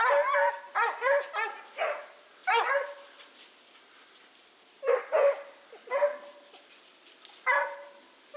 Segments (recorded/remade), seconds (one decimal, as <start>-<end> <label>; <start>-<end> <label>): 0.0-8.4 recorded